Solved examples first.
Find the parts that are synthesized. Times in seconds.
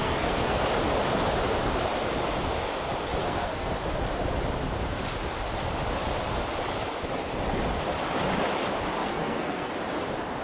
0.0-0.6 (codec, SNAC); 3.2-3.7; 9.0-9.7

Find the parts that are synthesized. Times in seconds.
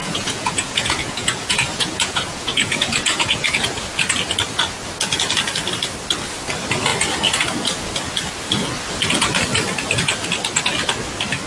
0.0-3.8 (vocoder, Vocos)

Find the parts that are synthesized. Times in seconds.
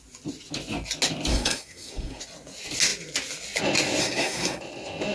1.3-2.2 (codec, SNAC); 4.0-4.6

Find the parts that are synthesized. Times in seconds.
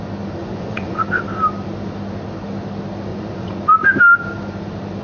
0.4-1.0 (vocoder, Vocos); 3.1-3.6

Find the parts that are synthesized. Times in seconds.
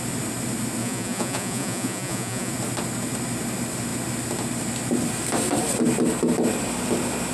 0.8-2.5 (vocoder, Vocos)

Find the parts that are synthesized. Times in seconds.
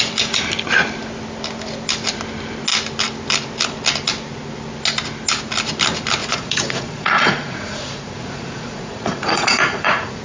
6.2-10.2 (vocoder, Vocos)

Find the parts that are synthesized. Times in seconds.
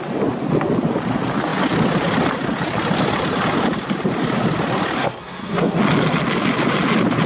5.0-5.8 (codec, SNAC)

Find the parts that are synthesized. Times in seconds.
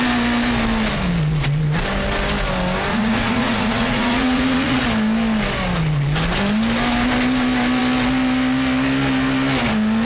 2.9-4.8 (vocoder, Vocos)